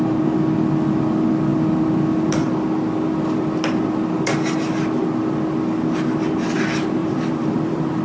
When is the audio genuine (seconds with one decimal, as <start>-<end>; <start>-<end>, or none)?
0.0-7.0